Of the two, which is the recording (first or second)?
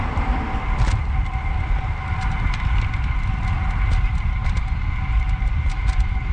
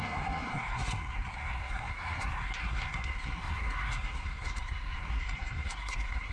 first